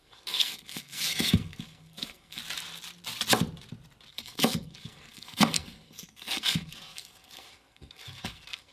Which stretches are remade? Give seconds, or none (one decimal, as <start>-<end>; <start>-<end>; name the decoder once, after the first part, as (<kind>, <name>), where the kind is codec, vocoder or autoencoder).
0.0-2.4 (codec, SNAC); 4.1-8.7